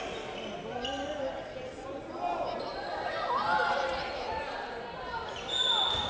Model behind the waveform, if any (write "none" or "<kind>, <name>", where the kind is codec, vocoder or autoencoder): none